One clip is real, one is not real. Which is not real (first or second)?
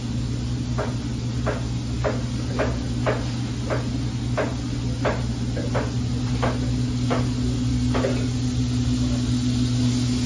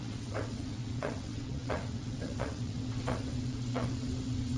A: second